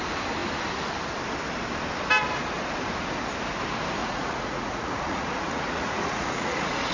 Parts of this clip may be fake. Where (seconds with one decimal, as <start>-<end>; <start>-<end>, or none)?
4.0-6.9